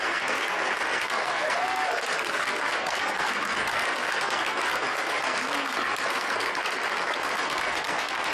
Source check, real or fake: fake